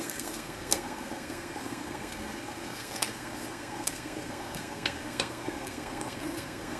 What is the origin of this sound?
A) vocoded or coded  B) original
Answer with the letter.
A